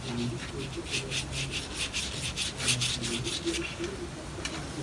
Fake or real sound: real